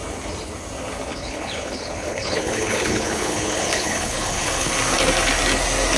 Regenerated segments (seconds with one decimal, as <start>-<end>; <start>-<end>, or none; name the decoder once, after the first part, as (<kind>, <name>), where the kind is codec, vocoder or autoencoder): 1.1-4.7 (codec, HILCodec)